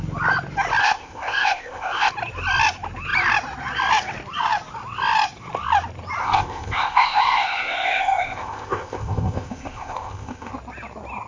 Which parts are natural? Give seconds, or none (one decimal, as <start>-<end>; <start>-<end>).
0.0-0.8; 2.1-6.2; 10.5-11.3